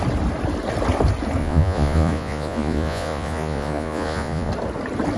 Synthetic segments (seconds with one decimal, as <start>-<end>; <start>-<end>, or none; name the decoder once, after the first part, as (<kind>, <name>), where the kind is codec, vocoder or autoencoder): 1.4-4.5 (vocoder, Vocos)

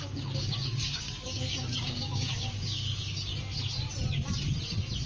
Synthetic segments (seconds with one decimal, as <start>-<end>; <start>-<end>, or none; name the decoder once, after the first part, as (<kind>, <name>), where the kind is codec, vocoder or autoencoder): 0.0-3.3 (codec, DAC)

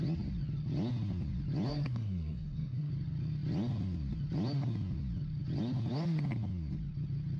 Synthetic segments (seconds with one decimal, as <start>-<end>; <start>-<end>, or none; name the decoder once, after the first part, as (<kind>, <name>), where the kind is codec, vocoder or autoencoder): 1.7-2.9 (codec, SNAC)

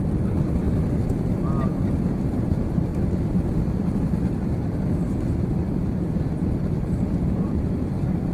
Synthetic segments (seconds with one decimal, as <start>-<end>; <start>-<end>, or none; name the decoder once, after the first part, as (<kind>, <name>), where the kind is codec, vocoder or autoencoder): 2.9-7.7 (vocoder, BigVGAN v2)

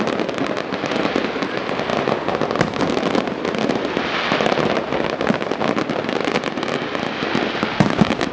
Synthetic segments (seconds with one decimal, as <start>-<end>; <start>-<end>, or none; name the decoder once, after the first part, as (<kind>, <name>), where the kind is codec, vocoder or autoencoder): none

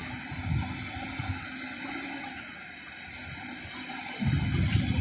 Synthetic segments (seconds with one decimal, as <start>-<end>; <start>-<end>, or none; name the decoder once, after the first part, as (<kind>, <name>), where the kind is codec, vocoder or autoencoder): none

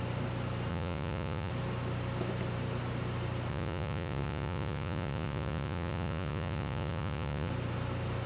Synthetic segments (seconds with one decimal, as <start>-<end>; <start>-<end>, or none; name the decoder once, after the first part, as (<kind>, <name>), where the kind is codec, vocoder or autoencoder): 0.7-1.5 (vocoder, Vocos); 3.5-7.5

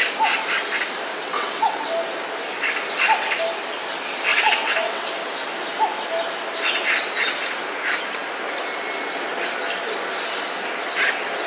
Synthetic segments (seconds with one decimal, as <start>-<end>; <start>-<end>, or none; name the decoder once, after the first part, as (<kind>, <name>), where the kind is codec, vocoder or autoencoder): 1.1-1.9 (vocoder, WaveNeXt); 4.3-5.1